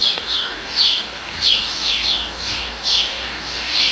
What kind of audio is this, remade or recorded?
remade